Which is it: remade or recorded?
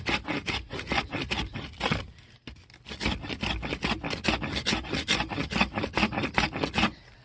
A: recorded